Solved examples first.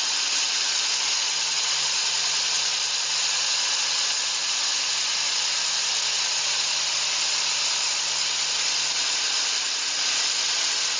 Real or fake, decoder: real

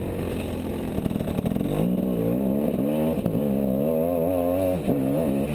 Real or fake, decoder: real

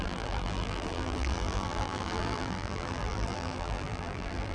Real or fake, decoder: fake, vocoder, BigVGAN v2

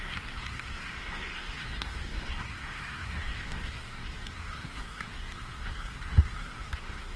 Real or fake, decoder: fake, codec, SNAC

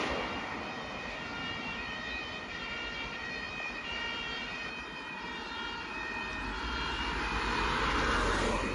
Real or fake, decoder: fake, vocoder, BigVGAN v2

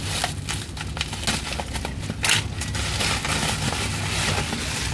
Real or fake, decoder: real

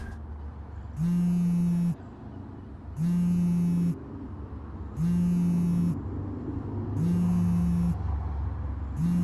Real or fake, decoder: real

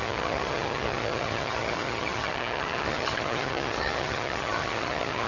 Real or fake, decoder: fake, vocoder, HiFi-GAN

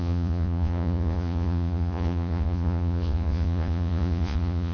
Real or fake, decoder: fake, vocoder, Vocos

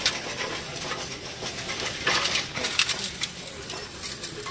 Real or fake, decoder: real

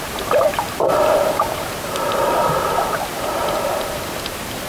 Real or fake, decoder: fake, vocoder, BigVGAN v2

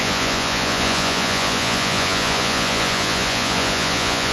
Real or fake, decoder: fake, vocoder, Vocos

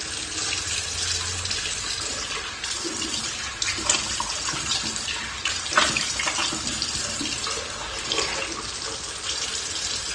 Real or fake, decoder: real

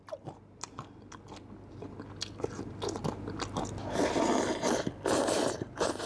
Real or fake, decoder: real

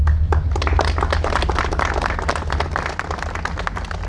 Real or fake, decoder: real